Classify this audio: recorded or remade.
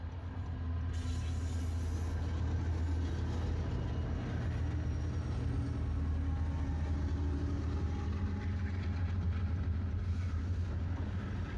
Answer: recorded